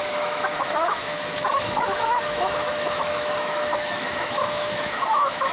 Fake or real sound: fake